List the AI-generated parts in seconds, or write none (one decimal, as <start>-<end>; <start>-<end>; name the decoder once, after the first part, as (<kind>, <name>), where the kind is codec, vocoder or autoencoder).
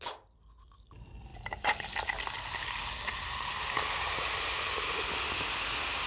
none